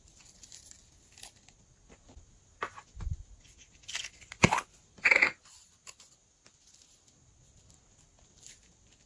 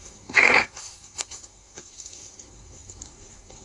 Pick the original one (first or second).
first